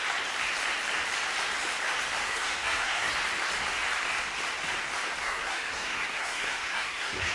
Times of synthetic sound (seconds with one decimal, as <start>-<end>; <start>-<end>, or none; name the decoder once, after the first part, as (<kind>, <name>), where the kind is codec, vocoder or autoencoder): 2.2-3.1 (codec, SNAC); 5.2-7.3